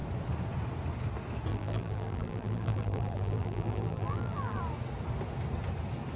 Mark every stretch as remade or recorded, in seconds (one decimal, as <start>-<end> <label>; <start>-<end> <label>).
0.0-1.5 recorded; 1.5-4.6 remade; 4.6-6.2 recorded